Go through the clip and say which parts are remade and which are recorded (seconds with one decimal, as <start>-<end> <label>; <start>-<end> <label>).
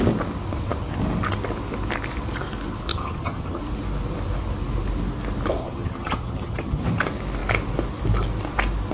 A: 0.0-2.9 recorded; 2.9-3.6 remade; 3.6-5.6 recorded; 5.6-6.8 remade; 6.8-8.9 recorded